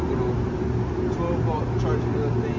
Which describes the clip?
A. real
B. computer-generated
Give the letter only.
A